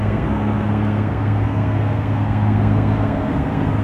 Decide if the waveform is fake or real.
fake